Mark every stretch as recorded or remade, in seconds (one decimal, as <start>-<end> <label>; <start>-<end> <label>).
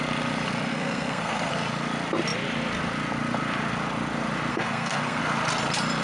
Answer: 0.0-0.7 recorded; 0.7-1.5 remade; 1.5-4.5 recorded; 4.5-5.2 remade; 5.2-6.0 recorded